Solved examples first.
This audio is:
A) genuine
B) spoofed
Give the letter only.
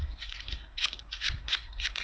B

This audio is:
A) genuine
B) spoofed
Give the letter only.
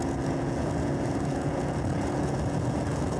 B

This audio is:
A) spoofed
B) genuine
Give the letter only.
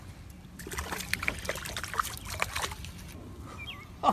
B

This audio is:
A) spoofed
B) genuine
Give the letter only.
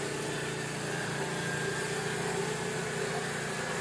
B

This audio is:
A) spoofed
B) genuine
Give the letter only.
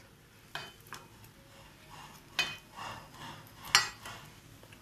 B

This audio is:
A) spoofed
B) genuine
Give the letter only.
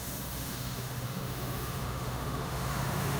A